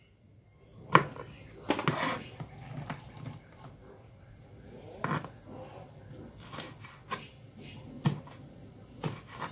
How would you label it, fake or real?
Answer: real